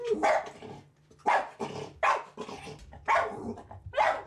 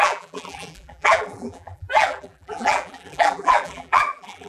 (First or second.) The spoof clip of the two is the second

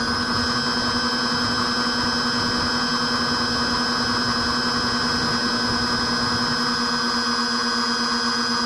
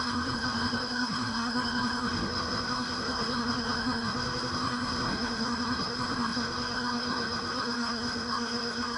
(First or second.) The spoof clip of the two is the second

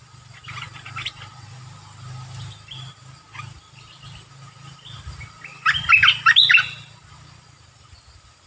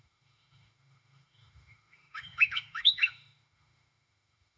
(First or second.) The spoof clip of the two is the second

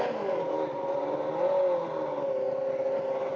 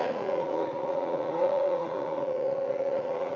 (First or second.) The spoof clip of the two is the second